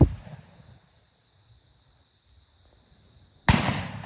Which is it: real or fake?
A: real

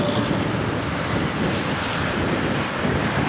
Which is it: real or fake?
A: real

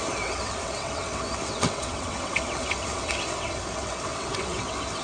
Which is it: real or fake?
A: fake